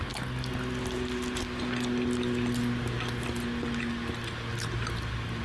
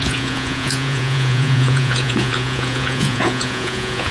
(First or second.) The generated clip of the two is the second